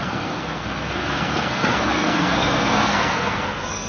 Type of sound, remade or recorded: remade